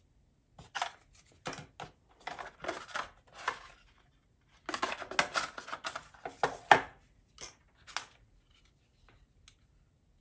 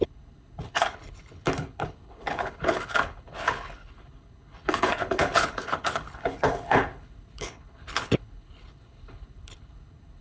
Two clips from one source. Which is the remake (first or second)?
second